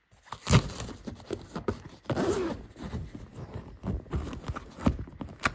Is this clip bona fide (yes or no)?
yes